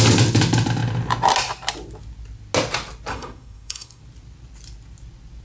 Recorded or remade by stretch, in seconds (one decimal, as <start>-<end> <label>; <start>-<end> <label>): 0.0-3.1 recorded; 3.1-4.0 remade; 4.0-5.4 recorded